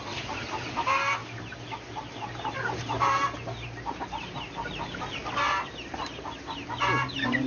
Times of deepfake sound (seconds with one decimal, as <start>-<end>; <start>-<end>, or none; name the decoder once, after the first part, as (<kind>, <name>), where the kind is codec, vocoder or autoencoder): none